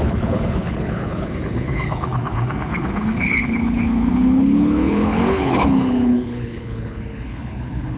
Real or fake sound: fake